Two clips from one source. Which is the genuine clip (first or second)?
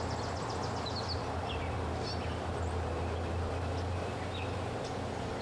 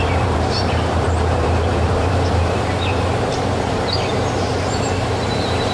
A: first